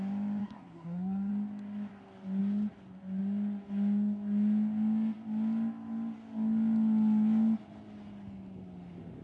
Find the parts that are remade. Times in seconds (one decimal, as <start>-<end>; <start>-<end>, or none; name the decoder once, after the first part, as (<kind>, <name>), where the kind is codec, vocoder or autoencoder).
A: 0.4-1.3 (codec, SNAC)